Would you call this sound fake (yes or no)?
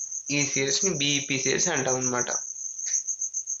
no